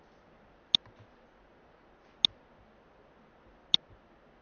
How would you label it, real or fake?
real